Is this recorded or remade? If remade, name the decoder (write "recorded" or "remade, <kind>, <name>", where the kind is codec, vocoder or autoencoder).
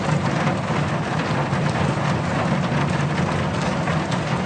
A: recorded